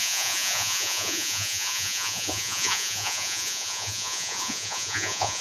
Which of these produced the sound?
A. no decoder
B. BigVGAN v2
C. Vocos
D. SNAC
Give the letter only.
C